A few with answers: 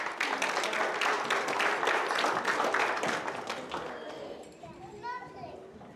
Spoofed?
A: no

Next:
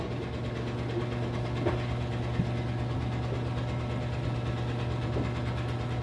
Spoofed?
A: no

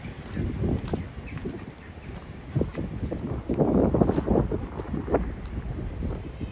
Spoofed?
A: no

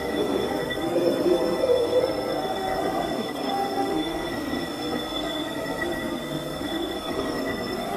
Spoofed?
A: yes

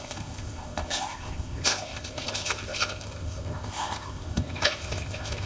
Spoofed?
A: yes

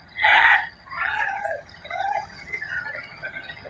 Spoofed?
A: yes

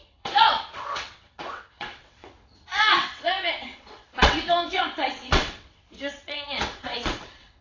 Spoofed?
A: yes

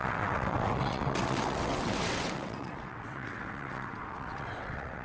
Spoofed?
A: yes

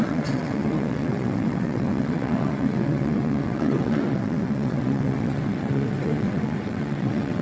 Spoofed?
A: yes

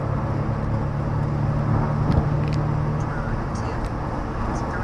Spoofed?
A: no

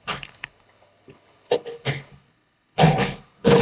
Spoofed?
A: yes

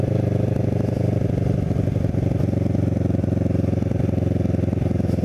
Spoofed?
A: no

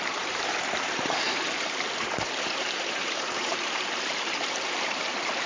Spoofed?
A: yes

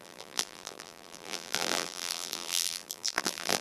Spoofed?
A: yes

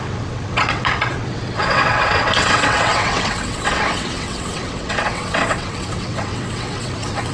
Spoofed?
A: yes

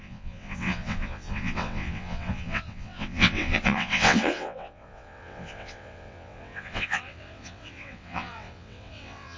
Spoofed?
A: yes